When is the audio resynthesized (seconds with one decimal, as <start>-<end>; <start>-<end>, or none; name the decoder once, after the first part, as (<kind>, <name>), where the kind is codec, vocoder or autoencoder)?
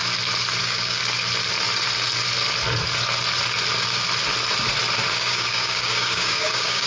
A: 0.6-1.0 (codec, DAC); 5.1-6.9